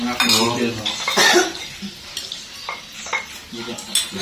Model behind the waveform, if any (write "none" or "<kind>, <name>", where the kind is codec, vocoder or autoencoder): none